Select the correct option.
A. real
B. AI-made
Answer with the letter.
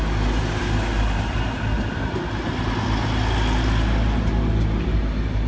A